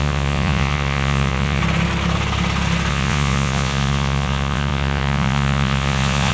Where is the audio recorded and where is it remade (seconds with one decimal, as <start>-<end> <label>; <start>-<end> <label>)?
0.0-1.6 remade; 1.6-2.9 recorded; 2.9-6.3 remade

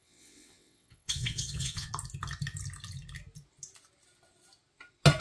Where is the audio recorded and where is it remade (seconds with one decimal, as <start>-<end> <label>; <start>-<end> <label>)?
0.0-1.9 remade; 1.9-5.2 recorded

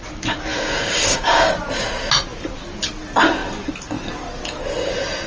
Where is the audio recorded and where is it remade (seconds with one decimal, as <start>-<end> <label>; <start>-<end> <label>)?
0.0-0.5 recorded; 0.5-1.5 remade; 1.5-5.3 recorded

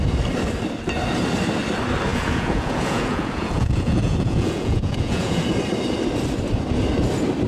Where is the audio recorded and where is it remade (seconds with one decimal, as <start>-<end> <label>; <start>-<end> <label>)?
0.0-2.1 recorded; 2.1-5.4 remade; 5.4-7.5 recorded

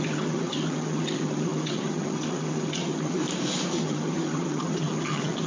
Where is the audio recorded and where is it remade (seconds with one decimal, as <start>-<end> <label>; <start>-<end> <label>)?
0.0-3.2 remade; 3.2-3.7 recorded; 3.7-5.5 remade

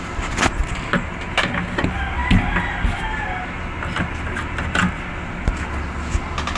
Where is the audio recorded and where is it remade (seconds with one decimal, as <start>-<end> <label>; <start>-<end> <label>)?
0.0-6.6 recorded

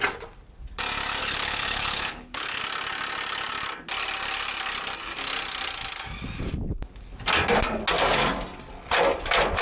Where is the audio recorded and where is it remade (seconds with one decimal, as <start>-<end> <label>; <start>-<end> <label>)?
0.0-1.2 recorded; 1.2-2.6 remade; 2.6-9.6 recorded